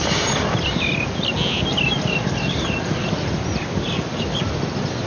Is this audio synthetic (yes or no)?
no